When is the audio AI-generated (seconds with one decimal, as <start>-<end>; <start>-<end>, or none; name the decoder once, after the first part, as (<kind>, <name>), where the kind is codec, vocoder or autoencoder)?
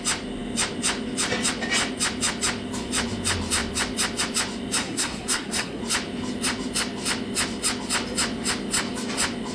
4.8-5.8 (codec, SNAC)